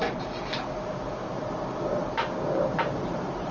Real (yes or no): no